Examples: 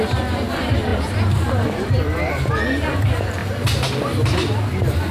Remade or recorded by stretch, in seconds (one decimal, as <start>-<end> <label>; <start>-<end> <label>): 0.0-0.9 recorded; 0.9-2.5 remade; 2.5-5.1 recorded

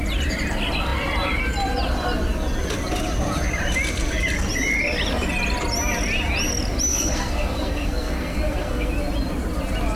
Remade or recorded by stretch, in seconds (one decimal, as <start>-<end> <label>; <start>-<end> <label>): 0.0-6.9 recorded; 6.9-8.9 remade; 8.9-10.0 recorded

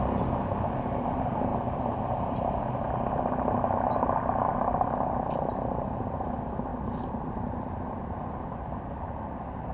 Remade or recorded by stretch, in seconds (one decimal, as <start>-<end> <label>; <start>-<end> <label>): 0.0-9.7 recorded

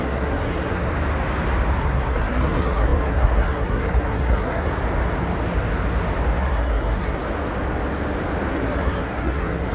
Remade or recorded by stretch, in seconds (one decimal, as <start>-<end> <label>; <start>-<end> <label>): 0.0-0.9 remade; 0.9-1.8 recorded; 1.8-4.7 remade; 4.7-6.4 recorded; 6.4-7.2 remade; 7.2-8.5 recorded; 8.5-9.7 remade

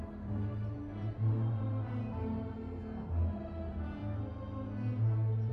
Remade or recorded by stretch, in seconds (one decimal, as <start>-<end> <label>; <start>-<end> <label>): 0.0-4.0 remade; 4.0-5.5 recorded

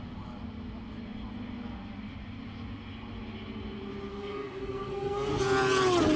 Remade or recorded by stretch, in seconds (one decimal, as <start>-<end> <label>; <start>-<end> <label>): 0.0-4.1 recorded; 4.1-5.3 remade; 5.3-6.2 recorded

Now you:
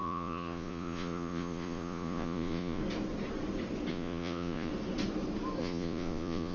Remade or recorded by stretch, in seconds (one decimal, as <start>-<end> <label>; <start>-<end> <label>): 0.0-2.8 remade; 2.8-3.9 recorded; 3.9-4.7 remade; 4.7-5.6 recorded; 5.6-6.5 remade